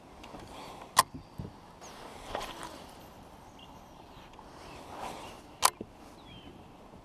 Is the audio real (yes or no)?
yes